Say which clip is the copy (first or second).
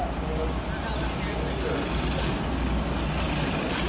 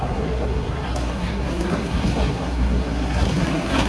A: second